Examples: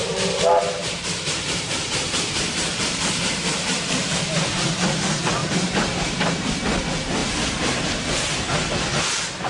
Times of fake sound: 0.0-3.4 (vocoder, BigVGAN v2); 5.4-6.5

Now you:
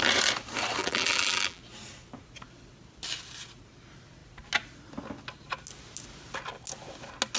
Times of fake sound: 0.8-1.6 (vocoder, BigVGAN v2)

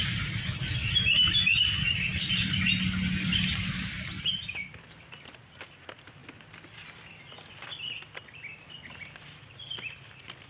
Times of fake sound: 0.0-6.2 (vocoder, BigVGAN v2); 8.0-10.5